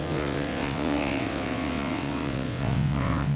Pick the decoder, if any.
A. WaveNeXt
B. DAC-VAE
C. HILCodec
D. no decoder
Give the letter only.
A